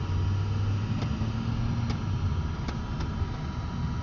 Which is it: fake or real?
real